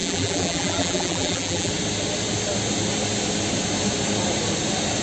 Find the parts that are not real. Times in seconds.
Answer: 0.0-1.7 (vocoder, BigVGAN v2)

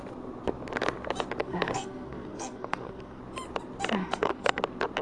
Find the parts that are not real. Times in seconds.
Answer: 1.4-3.2 (codec, SNAC); 4.0-4.6

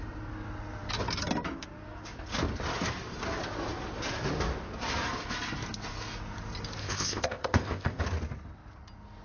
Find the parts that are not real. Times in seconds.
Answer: 6.8-8.0 (codec, ZipCodec)

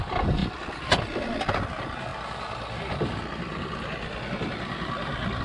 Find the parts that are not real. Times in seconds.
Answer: none

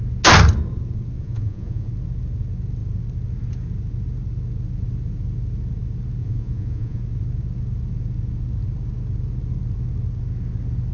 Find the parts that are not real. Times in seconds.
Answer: 1.2-1.9 (vocoder, Vocos); 6.2-7.0

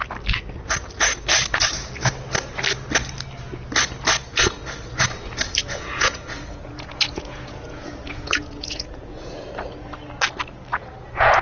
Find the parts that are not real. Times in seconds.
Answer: 5.6-9.5 (vocoder, Vocos); 10.7-11.4

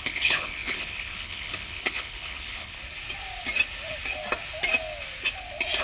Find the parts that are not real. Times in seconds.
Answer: 0.0-2.8 (codec, HILCodec)

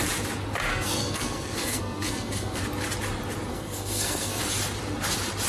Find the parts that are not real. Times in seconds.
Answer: 0.7-2.6 (codec, SNAC); 3.5-4.4